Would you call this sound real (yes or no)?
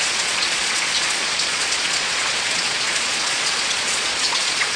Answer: no